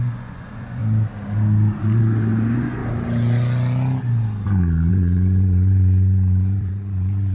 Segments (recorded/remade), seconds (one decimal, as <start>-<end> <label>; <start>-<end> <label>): 0.0-0.8 remade; 0.8-1.8 recorded; 1.8-2.8 remade; 2.8-4.9 recorded; 4.9-7.3 remade